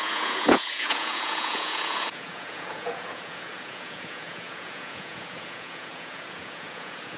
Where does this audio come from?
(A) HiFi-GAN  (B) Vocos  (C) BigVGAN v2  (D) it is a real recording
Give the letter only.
B